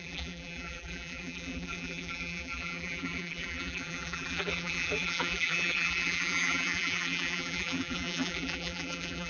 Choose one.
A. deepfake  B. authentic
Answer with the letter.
A